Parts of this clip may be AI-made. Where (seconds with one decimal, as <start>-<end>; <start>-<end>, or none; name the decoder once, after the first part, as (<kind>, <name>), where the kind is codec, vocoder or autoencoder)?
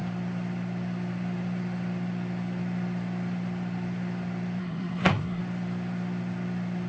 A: 4.6-5.4 (codec, SNAC)